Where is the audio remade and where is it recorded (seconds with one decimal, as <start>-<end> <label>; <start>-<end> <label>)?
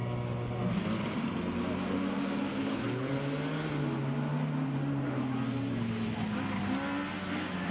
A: 0.0-2.5 recorded; 2.5-3.1 remade; 3.1-7.7 recorded